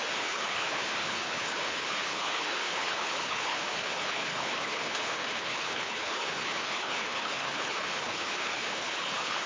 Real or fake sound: fake